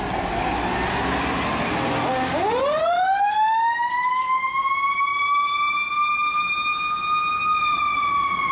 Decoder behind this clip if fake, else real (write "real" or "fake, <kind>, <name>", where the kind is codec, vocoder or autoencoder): real